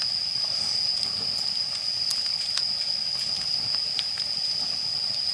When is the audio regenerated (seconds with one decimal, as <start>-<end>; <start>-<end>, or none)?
none